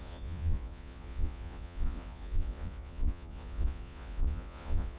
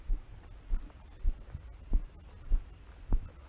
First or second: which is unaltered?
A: second